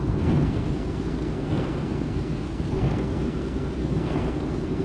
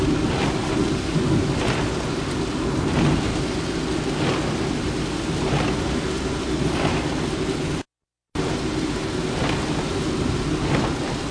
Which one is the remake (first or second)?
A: first